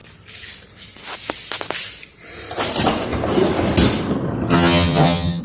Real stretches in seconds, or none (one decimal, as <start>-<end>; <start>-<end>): 0.0-4.5